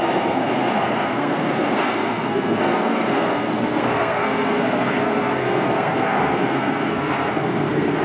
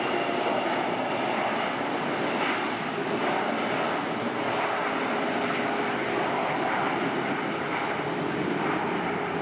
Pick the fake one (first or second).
first